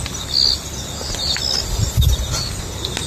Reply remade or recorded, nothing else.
recorded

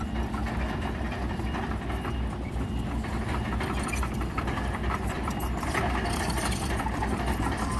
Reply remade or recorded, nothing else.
remade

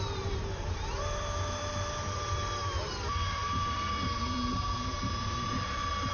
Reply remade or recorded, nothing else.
remade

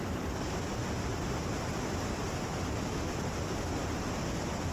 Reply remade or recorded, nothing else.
recorded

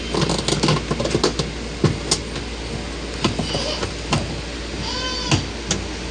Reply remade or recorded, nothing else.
recorded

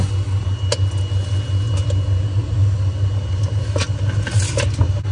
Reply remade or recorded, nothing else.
recorded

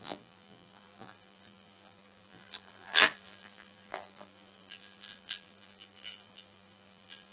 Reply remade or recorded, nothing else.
remade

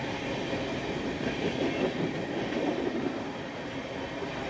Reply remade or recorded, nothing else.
remade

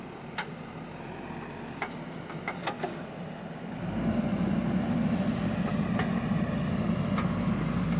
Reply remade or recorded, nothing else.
recorded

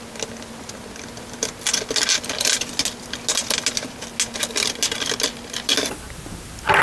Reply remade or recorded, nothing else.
recorded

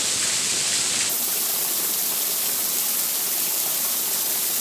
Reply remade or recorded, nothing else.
recorded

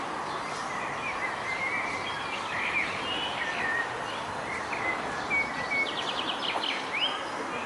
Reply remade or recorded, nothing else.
recorded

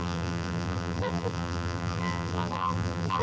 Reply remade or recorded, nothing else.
remade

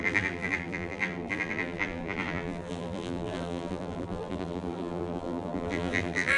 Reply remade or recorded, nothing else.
remade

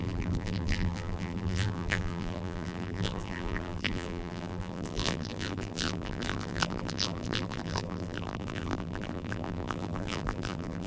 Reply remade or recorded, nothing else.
remade